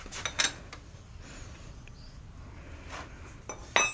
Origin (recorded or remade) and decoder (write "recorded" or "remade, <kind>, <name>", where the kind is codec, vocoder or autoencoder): recorded